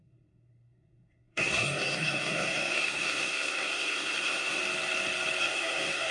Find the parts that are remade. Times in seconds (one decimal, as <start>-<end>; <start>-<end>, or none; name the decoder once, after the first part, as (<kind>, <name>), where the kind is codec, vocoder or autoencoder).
0.0-4.6 (codec, SNAC); 5.4-6.1